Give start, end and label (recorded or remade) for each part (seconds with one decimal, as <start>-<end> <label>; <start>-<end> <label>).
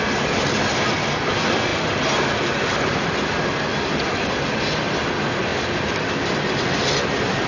0.0-7.5 recorded